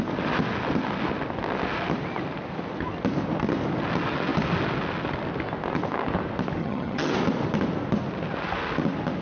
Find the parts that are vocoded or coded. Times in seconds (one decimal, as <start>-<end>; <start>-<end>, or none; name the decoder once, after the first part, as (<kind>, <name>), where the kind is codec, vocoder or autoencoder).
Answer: 6.6-7.1 (vocoder, HiFi-GAN)